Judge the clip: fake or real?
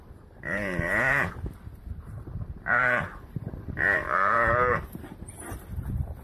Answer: fake